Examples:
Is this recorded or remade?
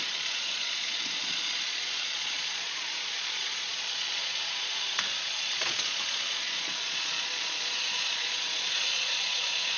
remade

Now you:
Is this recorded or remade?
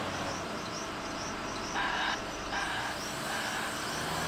recorded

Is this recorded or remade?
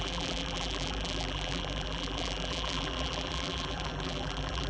remade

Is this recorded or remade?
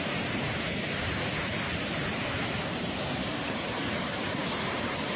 recorded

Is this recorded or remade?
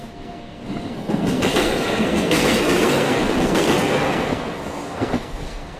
remade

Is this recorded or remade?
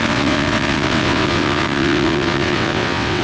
remade